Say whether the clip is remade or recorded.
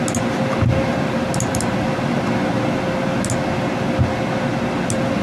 recorded